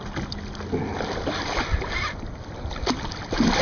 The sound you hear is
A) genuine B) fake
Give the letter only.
A